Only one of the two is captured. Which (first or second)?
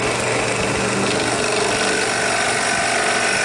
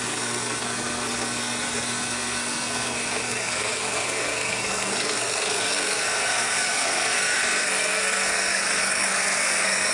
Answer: first